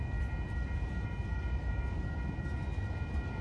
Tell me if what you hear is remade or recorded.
recorded